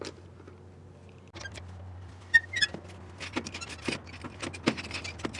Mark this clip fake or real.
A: real